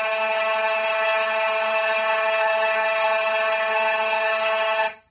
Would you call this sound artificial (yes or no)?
yes